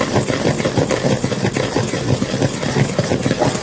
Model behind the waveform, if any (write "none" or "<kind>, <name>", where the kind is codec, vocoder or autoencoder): none